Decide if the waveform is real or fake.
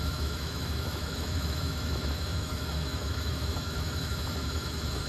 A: fake